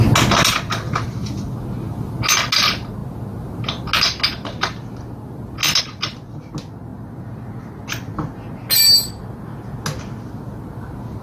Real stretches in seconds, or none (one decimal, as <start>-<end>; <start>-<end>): 0.0-11.2